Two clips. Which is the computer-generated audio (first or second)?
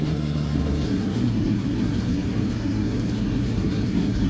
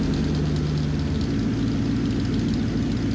first